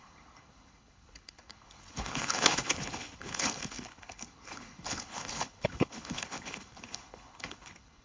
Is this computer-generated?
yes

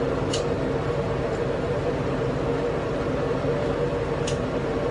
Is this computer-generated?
yes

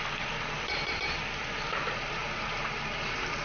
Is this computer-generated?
yes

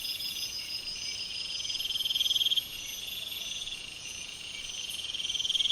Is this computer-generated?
yes